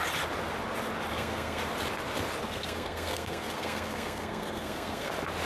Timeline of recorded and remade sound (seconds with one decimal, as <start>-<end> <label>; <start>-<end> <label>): 0.0-1.1 recorded; 1.1-1.6 remade; 1.6-2.4 recorded; 2.4-5.1 remade; 5.1-5.5 recorded